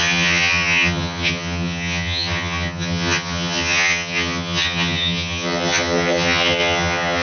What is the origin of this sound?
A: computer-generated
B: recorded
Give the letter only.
A